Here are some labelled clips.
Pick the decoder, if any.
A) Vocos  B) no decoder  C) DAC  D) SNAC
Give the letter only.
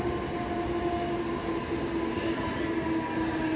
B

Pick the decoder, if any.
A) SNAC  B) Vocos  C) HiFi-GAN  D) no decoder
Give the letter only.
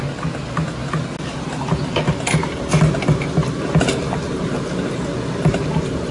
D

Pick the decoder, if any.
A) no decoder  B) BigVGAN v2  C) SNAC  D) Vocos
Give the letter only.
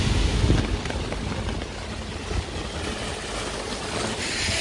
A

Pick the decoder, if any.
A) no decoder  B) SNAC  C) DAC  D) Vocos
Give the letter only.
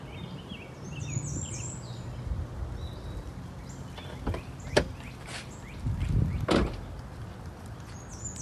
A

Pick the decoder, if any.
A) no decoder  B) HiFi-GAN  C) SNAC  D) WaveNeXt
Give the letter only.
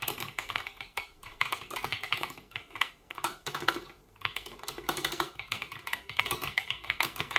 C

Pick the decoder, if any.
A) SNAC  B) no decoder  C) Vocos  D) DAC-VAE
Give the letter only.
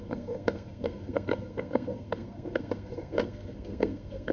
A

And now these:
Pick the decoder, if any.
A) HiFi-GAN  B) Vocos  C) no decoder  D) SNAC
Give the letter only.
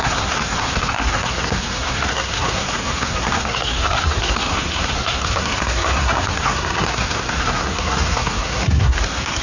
D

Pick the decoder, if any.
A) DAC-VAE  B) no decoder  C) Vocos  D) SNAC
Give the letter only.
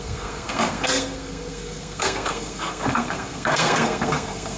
D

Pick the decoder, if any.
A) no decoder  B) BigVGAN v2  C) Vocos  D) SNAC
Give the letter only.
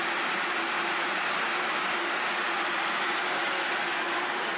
A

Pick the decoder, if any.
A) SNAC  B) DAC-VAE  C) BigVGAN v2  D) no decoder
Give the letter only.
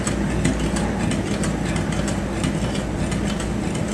D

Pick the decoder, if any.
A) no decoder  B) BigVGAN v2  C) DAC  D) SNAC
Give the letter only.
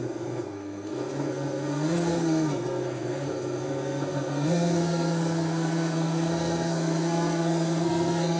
D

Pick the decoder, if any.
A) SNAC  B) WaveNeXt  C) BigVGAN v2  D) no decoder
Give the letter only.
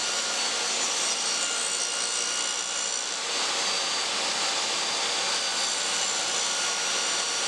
D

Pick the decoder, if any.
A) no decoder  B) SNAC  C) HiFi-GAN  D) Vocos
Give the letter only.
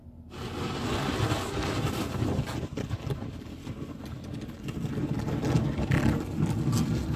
A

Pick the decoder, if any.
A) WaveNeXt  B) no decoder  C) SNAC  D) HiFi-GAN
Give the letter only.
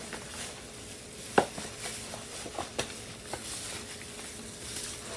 B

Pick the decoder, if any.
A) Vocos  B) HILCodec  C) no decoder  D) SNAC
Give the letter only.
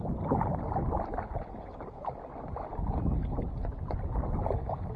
C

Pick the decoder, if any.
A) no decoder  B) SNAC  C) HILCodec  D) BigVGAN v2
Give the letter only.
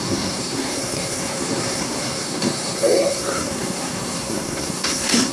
B